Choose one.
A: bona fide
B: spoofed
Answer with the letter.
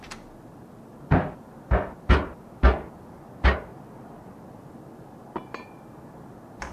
A